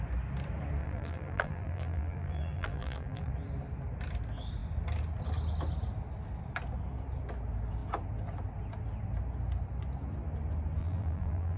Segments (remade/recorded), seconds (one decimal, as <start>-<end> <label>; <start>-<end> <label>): 0.0-0.8 recorded; 0.8-3.3 remade; 3.3-10.8 recorded; 10.8-11.6 remade